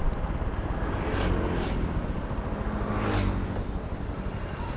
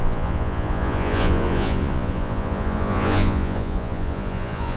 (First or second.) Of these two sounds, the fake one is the second